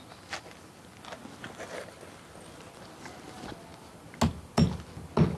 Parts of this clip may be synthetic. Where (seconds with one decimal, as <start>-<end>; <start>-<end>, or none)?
none